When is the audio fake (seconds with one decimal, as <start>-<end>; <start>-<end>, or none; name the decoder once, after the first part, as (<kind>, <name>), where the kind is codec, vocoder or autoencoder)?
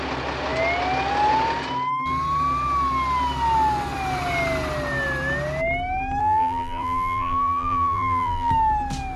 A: 6.2-8.5 (vocoder, BigVGAN v2)